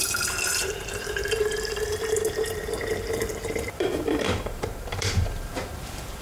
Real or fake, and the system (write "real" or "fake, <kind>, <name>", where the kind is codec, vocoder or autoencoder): fake, vocoder, BigVGAN v2